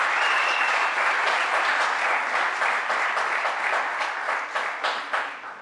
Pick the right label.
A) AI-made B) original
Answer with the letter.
B